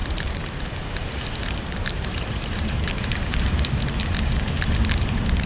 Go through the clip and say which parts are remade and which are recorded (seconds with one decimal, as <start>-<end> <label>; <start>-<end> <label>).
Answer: 0.0-5.5 remade